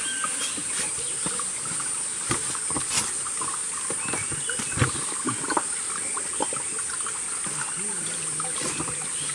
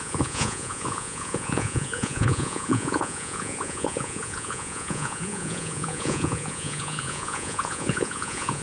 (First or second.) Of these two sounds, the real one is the first